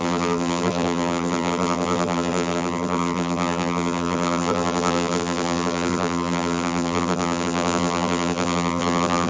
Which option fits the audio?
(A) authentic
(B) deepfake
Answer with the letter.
B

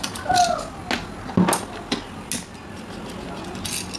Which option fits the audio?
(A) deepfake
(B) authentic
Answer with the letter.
B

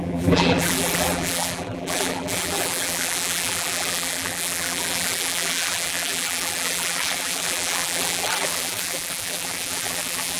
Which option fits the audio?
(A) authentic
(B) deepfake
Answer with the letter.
B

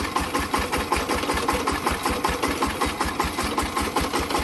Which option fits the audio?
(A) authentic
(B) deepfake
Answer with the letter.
A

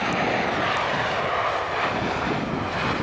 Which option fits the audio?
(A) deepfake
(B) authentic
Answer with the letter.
B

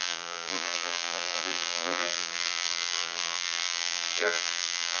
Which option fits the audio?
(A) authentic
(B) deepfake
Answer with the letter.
B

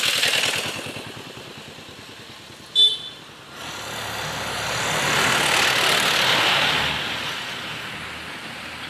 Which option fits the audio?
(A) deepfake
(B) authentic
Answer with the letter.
B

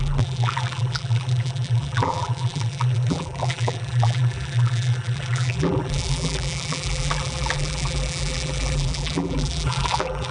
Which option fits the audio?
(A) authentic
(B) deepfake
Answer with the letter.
B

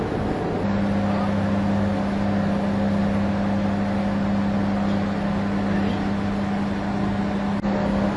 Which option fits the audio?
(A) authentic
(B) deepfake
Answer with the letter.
A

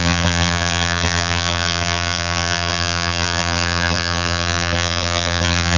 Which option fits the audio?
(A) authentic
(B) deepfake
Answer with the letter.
B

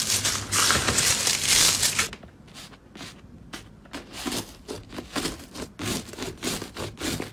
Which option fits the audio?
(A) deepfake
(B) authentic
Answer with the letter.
B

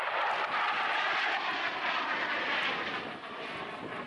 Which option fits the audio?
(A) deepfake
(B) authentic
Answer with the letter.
B